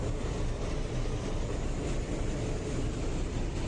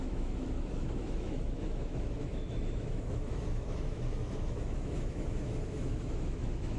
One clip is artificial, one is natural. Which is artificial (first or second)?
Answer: second